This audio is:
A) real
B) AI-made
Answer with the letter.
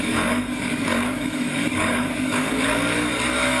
B